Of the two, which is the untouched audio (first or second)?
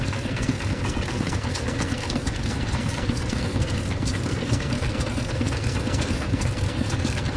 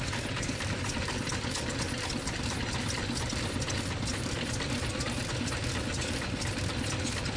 second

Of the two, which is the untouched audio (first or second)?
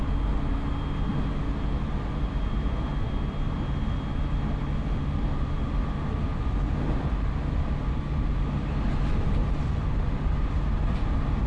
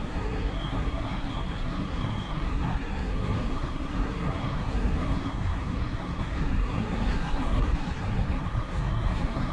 first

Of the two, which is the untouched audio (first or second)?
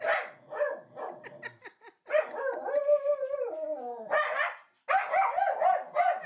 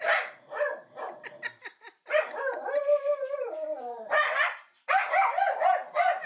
first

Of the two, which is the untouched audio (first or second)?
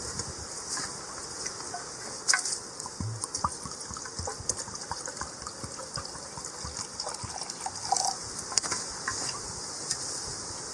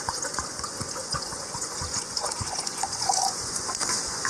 first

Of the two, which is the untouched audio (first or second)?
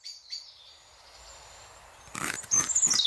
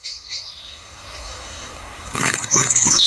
first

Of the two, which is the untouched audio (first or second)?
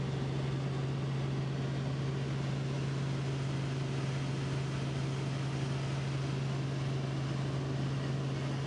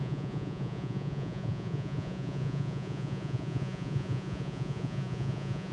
first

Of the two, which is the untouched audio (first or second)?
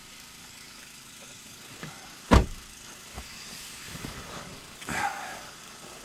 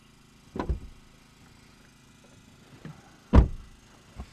second